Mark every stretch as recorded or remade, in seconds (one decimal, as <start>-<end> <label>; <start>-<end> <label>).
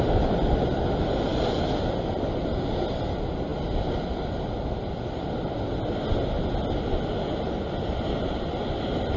0.0-9.2 recorded